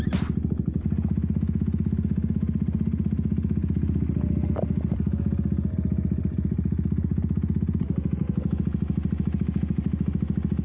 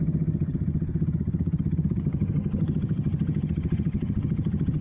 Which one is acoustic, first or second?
first